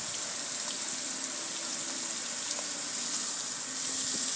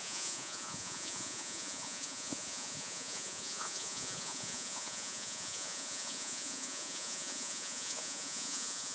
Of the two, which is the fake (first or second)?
second